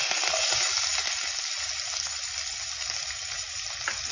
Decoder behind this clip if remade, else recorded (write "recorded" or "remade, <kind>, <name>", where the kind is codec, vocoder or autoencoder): recorded